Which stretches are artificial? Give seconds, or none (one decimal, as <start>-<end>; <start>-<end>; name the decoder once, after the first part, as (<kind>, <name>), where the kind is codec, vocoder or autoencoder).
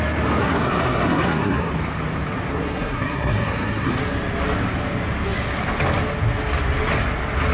0.4-1.7 (codec, SNAC); 2.5-4.0